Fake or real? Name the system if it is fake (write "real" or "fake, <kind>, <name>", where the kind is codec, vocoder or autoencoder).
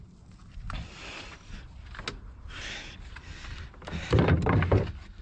real